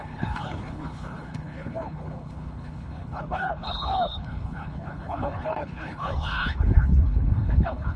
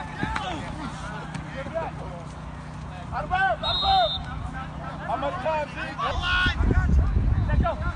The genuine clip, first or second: second